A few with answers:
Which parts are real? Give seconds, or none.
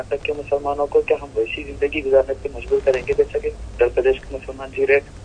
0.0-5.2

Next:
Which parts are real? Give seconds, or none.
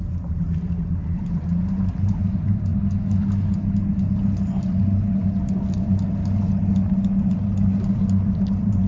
2.7-4.8; 5.2-7.3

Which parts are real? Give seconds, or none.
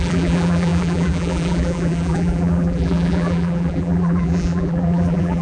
none